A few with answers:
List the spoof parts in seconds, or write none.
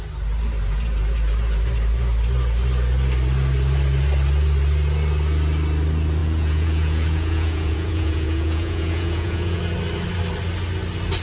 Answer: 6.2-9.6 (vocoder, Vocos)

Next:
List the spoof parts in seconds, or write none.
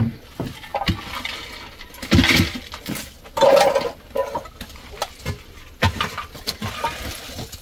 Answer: none